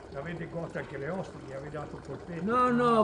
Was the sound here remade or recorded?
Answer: recorded